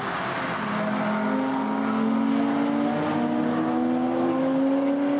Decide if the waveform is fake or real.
real